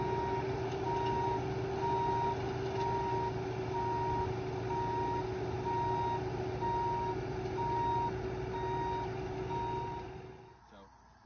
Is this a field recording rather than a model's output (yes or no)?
yes